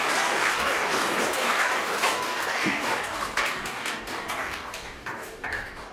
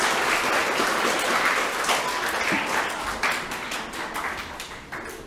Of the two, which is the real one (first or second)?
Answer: second